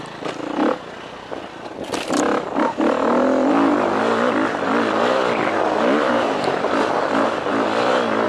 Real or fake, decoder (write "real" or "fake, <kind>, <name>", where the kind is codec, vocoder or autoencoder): real